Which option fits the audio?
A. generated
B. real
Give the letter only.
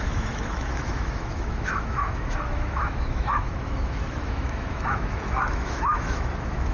A